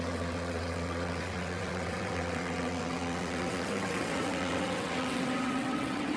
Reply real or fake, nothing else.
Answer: fake